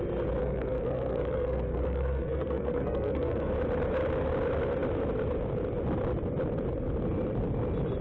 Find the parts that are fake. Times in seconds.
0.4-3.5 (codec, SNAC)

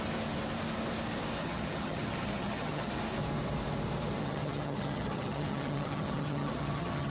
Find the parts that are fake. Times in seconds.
1.4-2.9 (vocoder, HiFi-GAN); 4.2-7.1

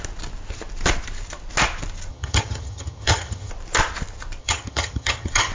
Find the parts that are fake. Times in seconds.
2.1-3.5 (vocoder, HiFi-GAN); 4.4-5.5

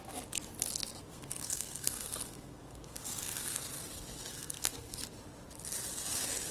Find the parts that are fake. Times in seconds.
1.1-3.6 (codec, SNAC); 4.3-5.0

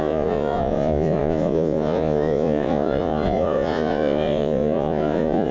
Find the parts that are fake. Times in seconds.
0.0-5.5 (vocoder, Vocos)

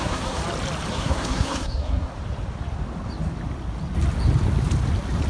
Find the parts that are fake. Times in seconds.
0.0-0.4 (codec, SNAC); 0.9-2.1

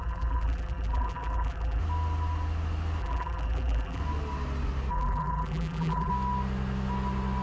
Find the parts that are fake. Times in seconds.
0.0-1.8 (vocoder, BigVGAN v2); 3.0-4.0; 4.9-6.1

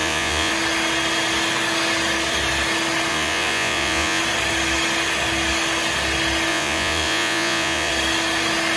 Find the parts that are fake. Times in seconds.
0.0-0.5 (vocoder, Vocos); 3.1-4.2; 6.5-7.9